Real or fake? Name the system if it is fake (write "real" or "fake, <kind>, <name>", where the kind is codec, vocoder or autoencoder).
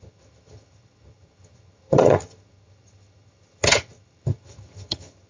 fake, vocoder, HiFi-GAN